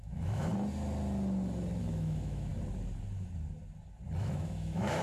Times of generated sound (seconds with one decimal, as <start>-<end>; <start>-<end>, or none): 0.0-0.5; 1.8-2.5; 4.2-5.0